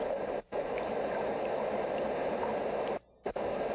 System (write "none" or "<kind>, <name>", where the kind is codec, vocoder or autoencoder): none